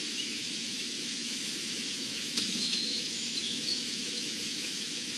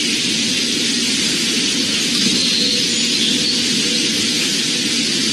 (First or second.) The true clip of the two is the second